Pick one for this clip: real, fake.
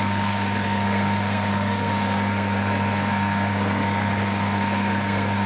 fake